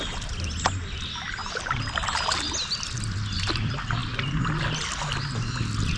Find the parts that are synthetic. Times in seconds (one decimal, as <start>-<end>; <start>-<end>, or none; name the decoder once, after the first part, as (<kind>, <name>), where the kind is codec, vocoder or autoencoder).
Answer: none